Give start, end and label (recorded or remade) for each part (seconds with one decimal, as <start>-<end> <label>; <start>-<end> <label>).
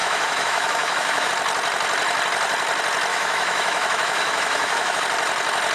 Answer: 0.0-1.3 remade; 1.3-3.1 recorded; 3.1-5.0 remade; 5.0-5.7 recorded